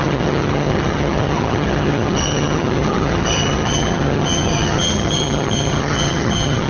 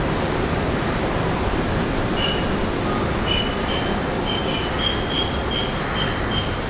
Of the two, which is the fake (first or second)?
first